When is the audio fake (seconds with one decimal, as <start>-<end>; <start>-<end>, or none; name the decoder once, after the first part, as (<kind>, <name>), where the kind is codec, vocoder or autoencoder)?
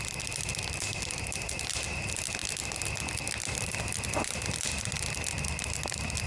none